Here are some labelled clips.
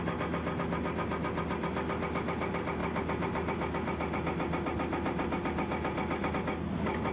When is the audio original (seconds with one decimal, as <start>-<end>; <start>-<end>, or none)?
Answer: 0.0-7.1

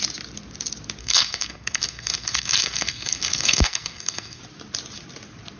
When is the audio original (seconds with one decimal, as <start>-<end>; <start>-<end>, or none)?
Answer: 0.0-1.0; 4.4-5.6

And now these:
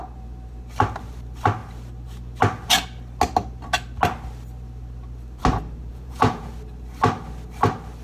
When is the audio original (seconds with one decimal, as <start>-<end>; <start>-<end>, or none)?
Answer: 0.0-5.9; 6.5-8.0